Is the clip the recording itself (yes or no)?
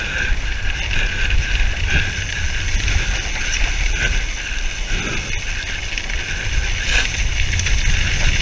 yes